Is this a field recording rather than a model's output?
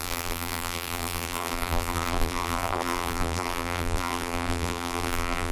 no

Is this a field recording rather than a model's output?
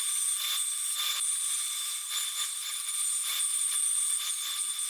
no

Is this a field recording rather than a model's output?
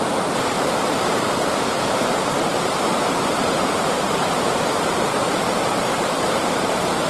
no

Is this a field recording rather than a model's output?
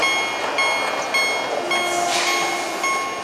yes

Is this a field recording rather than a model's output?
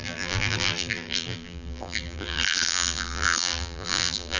no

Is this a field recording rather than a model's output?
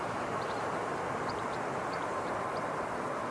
no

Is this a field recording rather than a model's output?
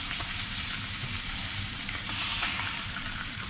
no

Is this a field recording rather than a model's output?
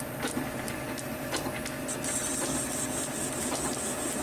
yes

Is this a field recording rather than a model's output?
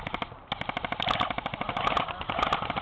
yes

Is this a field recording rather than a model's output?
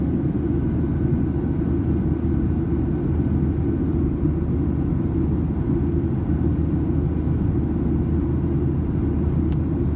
yes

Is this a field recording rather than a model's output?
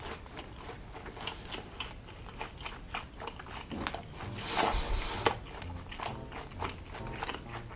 yes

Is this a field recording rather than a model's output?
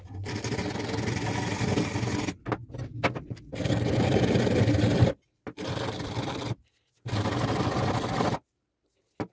yes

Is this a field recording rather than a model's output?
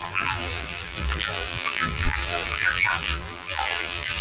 no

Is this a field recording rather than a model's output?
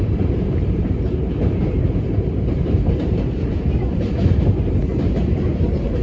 no